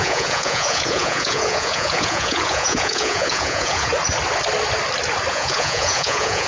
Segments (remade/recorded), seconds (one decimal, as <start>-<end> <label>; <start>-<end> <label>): 0.0-3.9 remade; 3.9-5.3 recorded; 5.3-6.5 remade